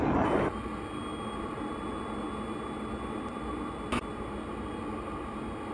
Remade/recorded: recorded